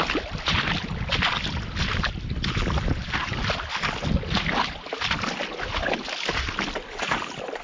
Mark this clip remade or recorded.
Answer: recorded